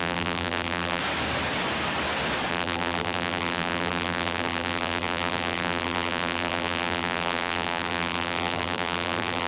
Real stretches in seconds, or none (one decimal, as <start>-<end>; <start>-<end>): 1.0-2.5